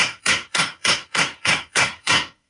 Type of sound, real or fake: fake